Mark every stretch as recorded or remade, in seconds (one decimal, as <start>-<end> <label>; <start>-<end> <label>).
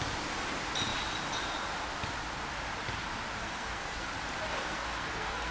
0.0-3.4 recorded; 3.4-4.1 remade; 4.1-4.5 recorded; 4.5-5.5 remade